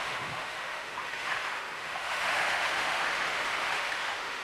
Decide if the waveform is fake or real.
fake